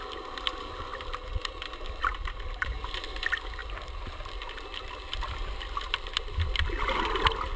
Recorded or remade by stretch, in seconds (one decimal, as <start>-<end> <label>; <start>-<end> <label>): 0.0-7.6 recorded

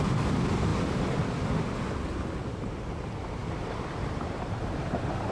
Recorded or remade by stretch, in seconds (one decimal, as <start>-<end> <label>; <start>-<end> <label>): 0.0-0.7 remade; 0.7-2.4 recorded; 2.4-5.3 remade